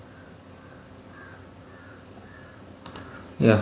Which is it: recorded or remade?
recorded